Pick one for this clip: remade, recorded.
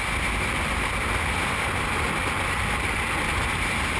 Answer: recorded